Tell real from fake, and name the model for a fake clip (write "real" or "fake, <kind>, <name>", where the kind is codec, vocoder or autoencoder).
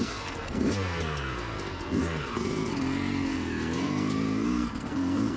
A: fake, codec, SNAC